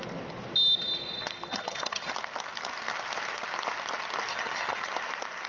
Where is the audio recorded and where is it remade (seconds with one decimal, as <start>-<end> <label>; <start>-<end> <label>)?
0.0-1.5 recorded; 1.5-2.1 remade; 2.1-4.3 recorded; 4.3-4.9 remade; 4.9-5.5 recorded